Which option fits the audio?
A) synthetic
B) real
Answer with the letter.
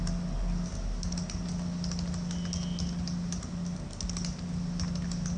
B